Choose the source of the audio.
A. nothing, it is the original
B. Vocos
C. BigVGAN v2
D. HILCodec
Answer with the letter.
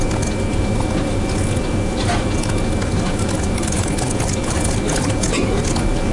A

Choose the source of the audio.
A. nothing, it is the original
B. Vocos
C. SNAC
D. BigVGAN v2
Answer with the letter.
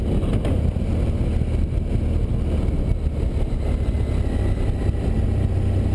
A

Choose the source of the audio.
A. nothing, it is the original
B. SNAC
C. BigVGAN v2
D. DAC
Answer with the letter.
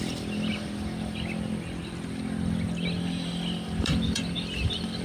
C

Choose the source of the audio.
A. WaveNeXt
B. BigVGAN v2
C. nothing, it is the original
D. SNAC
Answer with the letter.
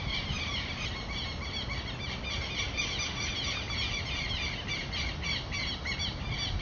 B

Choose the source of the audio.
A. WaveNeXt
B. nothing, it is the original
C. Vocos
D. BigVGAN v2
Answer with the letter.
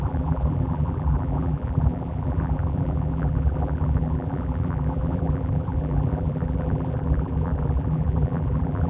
D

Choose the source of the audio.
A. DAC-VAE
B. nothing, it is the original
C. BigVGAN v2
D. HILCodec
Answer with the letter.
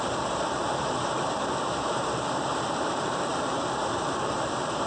C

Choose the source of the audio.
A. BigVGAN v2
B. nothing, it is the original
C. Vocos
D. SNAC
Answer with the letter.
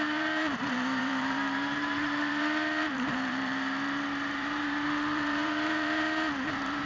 A